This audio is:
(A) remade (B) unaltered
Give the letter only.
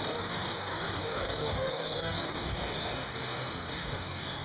A